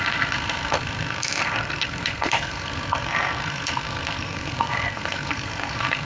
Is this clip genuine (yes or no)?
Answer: no